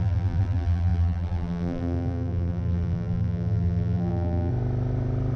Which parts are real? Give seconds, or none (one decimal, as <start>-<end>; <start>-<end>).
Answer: 4.5-5.4